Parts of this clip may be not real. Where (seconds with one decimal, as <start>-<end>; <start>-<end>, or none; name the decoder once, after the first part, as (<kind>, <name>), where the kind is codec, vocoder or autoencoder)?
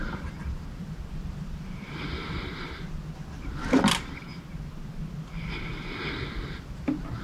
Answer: none